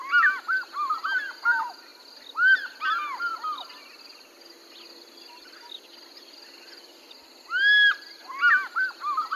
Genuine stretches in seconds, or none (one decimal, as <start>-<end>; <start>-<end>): 0.0-9.4